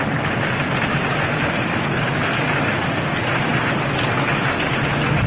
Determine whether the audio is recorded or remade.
recorded